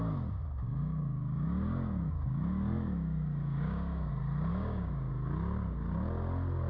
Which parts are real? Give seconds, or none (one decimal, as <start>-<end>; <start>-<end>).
0.0-0.4; 4.1-4.5; 5.1-6.7